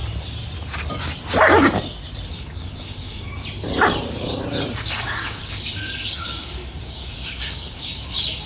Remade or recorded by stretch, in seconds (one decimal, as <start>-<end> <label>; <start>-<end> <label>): 0.0-2.4 recorded; 2.4-3.3 remade; 3.3-4.9 recorded; 4.9-8.5 remade